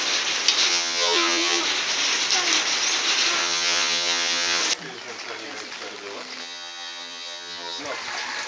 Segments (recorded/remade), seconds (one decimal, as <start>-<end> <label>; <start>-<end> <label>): 0.0-0.7 recorded; 0.7-1.6 remade; 1.6-3.4 recorded; 3.4-4.6 remade; 4.6-6.4 recorded; 6.4-7.8 remade; 7.8-8.5 recorded